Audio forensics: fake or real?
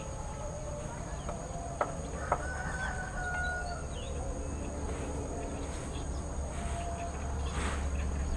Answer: real